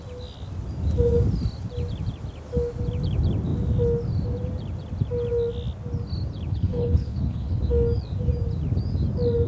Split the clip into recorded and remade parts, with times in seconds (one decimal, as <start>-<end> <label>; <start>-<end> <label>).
0.0-6.5 recorded; 6.5-7.6 remade; 7.6-9.5 recorded